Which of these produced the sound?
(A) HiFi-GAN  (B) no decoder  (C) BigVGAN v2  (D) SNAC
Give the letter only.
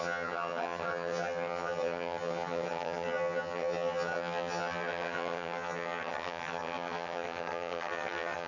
A